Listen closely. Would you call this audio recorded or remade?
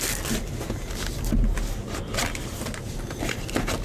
recorded